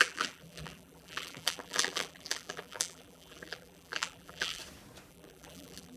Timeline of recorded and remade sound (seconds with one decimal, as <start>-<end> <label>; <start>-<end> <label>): 0.0-4.6 remade; 4.6-5.1 recorded; 5.1-6.0 remade